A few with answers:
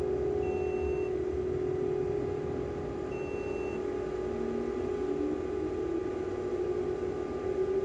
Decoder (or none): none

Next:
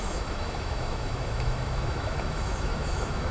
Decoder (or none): autoencoder, DAC-VAE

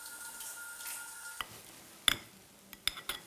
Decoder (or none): none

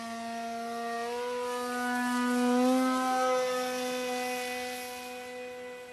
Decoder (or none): none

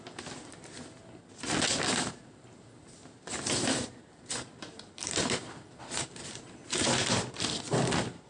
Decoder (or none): none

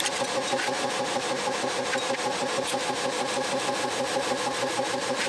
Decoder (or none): none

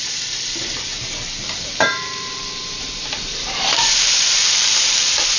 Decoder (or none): vocoder, BigVGAN v2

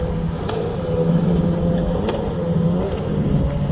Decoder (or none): none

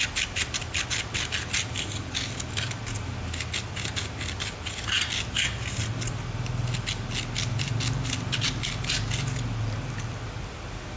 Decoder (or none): none